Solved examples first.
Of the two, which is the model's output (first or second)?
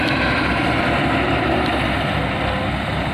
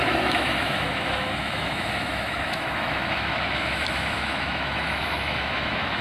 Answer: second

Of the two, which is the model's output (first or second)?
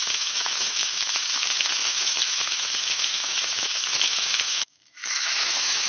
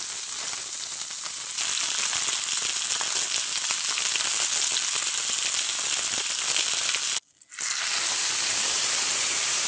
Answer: first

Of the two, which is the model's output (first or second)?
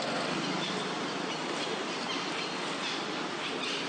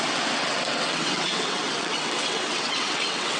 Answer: second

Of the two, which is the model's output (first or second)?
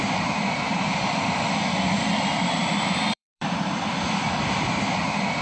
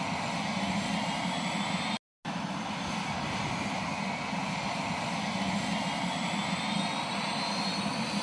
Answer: first